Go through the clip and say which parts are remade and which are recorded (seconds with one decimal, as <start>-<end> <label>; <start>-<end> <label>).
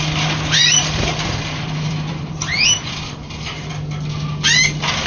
0.0-0.6 recorded; 0.6-3.7 remade; 3.7-5.1 recorded